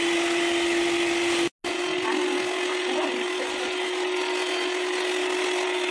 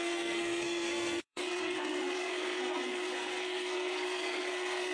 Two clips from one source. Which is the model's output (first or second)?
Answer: second